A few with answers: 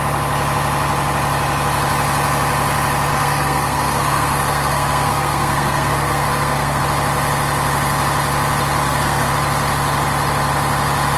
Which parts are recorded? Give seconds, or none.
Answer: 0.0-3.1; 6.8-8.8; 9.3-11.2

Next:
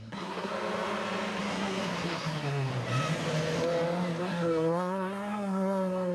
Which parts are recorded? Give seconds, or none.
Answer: 0.5-1.4; 2.7-4.2

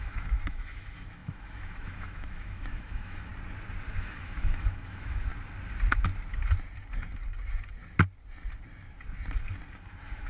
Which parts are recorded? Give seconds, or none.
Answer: 3.3-3.9; 5.3-9.7

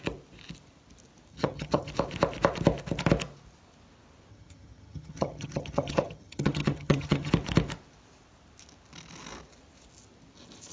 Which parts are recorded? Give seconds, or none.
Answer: 0.0-1.3; 1.9-4.3; 7.3-10.7

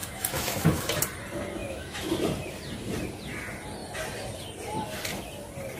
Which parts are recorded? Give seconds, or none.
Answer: 1.0-1.6; 2.1-5.8

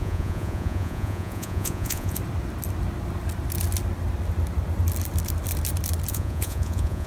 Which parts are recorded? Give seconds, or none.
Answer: 2.2-6.1

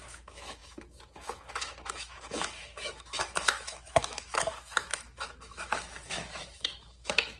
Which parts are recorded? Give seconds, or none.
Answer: none